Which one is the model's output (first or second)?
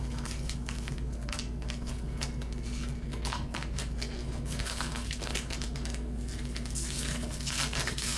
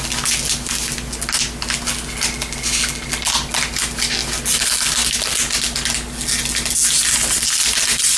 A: first